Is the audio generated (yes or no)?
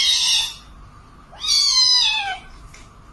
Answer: no